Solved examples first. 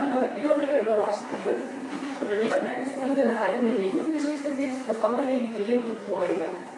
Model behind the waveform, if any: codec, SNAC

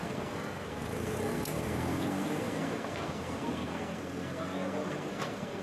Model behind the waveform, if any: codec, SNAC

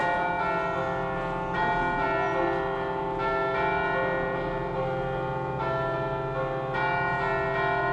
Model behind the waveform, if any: none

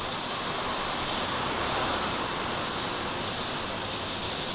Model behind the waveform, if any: none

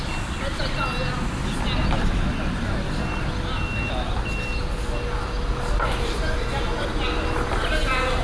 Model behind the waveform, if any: none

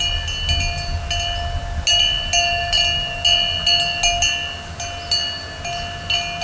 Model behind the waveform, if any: none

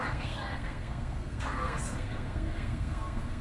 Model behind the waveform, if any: codec, SNAC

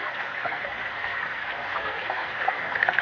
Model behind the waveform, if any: codec, SNAC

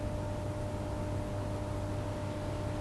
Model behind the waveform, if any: none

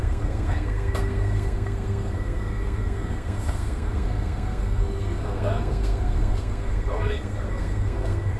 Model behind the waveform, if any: codec, SNAC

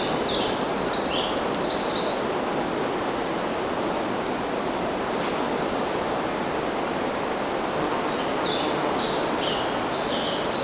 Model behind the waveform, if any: none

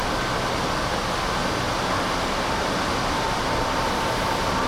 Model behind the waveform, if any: none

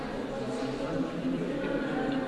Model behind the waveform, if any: none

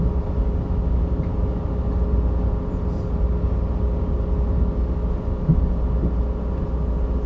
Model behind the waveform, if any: none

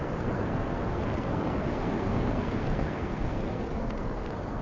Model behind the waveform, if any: codec, SNAC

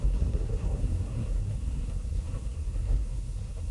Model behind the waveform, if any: codec, SNAC